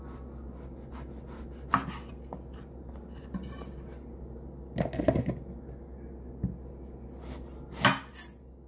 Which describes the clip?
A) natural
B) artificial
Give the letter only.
A